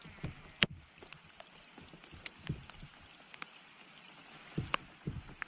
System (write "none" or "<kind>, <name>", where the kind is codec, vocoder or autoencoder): none